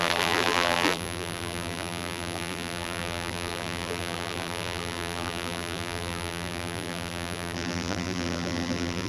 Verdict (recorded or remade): remade